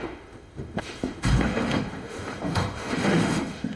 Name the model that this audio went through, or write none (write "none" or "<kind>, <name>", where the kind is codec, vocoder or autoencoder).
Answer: autoencoder, DAC-VAE